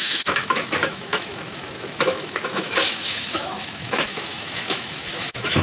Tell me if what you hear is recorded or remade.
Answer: remade